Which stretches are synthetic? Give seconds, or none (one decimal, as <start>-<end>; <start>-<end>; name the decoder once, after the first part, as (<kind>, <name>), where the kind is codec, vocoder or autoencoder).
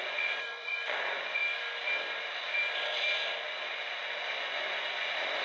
0.0-1.4 (vocoder, Vocos); 4.1-5.4